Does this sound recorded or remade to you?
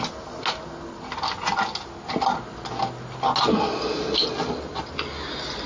recorded